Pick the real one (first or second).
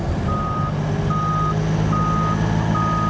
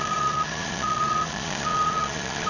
first